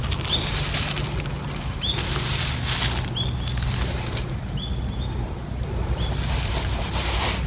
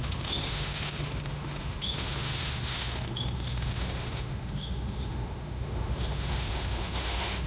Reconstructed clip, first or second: second